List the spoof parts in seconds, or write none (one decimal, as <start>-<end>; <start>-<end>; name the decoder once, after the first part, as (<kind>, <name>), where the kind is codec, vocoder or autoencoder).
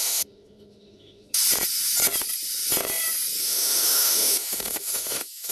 0.0-1.4 (autoencoder, DAC-VAE); 3.4-5.5